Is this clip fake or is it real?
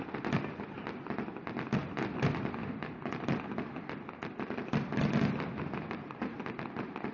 real